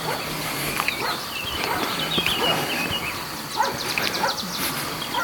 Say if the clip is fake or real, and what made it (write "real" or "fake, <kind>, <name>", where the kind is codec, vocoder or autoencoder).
real